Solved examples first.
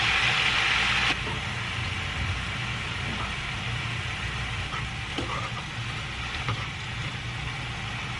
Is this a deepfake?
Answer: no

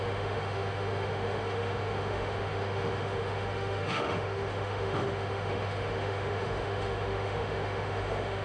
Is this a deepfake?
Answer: yes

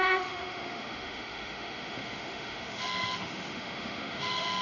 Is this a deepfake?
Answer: yes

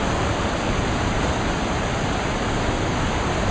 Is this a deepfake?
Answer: no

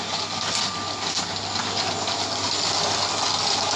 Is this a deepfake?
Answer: no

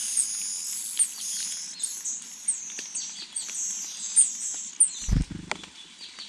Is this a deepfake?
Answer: no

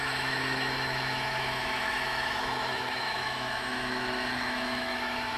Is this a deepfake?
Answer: yes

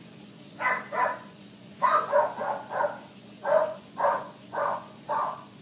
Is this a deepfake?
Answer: yes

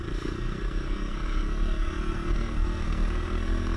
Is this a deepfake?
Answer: yes